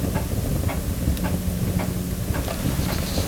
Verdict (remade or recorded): recorded